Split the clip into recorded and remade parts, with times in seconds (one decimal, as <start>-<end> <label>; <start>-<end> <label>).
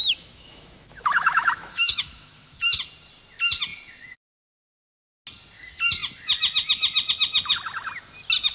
0.0-2.8 remade; 2.8-8.5 recorded